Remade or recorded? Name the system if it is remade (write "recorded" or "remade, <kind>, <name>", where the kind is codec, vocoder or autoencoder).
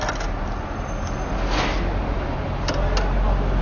recorded